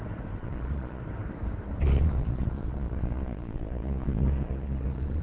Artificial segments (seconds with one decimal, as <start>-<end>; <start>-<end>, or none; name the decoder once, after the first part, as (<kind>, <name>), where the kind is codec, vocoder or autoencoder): 0.4-1.0 (vocoder, Vocos); 1.8-5.2